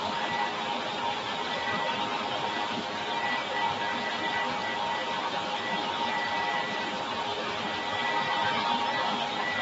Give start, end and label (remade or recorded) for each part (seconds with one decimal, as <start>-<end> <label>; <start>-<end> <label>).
0.0-9.6 recorded